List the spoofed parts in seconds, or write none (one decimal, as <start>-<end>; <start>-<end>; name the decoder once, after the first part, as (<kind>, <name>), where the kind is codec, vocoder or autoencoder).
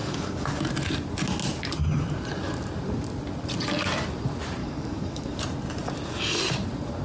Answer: 0.0-0.6 (codec, DAC); 4.6-5.4